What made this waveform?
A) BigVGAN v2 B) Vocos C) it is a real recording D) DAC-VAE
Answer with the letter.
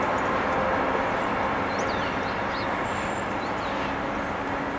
C